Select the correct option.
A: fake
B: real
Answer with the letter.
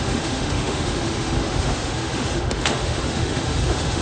A